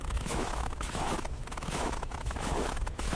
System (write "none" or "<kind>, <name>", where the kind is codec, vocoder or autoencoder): autoencoder, DAC-VAE